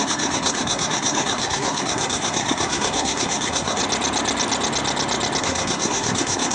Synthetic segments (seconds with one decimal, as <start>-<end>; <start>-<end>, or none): 0.0-3.8; 5.4-6.5